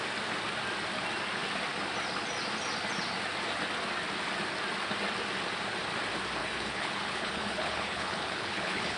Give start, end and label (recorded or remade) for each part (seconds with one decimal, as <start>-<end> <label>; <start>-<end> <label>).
0.0-6.4 recorded; 6.4-9.0 remade